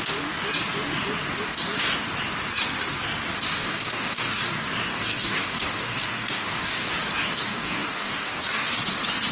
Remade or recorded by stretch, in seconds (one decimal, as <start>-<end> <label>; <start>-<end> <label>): 0.0-3.5 recorded; 3.5-4.5 remade; 4.5-4.9 recorded; 4.9-6.9 remade; 6.9-7.5 recorded; 7.5-8.7 remade; 8.7-9.3 recorded